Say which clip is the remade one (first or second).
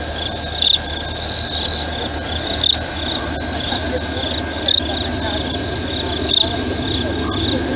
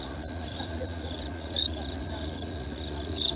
second